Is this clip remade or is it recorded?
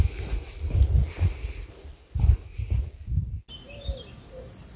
recorded